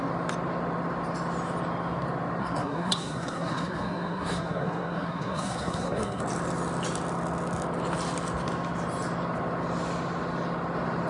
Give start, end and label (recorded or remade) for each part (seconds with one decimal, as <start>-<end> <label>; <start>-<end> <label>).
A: 0.0-2.4 recorded; 2.4-6.2 remade; 6.2-11.1 recorded